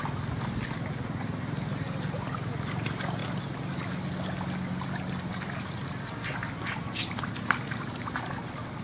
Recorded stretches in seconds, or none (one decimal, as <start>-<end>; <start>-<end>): 0.0-8.8